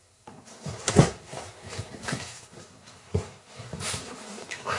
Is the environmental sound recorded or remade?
remade